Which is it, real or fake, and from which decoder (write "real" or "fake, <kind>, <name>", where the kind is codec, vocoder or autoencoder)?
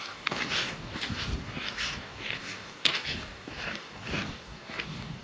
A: fake, codec, DAC